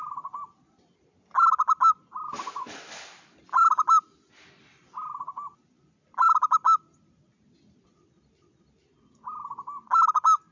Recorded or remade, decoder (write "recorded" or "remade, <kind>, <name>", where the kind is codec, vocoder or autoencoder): recorded